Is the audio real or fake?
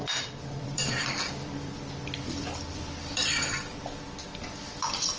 fake